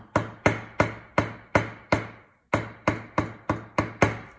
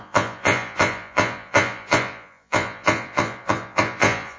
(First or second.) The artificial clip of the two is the second